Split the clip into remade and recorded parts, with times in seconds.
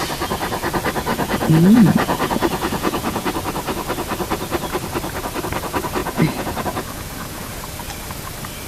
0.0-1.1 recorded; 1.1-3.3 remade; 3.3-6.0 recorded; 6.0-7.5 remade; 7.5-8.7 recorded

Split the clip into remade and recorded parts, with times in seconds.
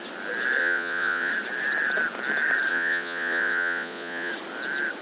0.0-0.6 recorded; 0.6-1.3 remade; 1.3-2.7 recorded; 2.7-4.3 remade; 4.3-5.0 recorded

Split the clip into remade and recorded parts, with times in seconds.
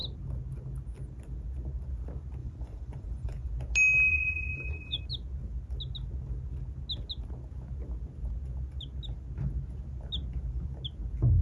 0.0-2.4 recorded; 2.4-3.5 remade; 3.5-4.1 recorded; 4.1-5.0 remade; 5.0-11.4 recorded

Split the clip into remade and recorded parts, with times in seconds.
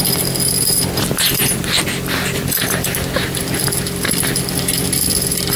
0.0-5.6 recorded